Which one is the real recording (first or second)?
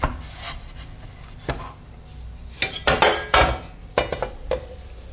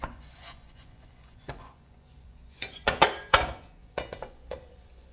first